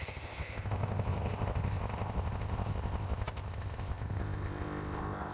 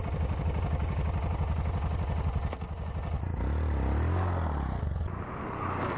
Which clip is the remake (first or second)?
first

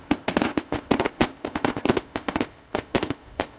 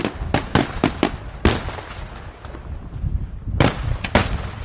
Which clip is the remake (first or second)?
first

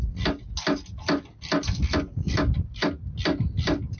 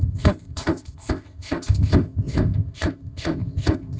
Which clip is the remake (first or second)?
second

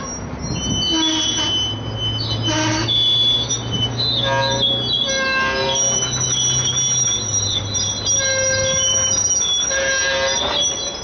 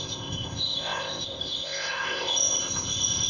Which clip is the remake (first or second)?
second